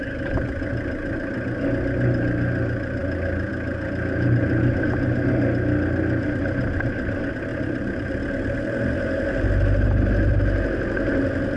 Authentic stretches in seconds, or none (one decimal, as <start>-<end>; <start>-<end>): 0.0-7.5; 9.4-11.6